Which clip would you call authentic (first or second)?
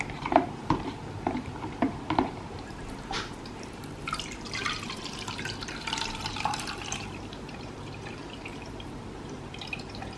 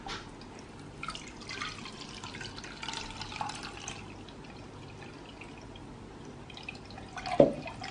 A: second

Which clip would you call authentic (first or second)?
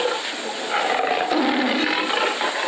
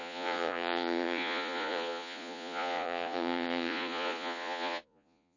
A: first